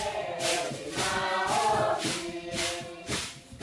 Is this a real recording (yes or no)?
no